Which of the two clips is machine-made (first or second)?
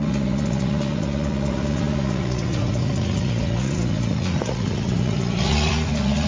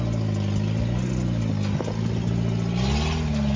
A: first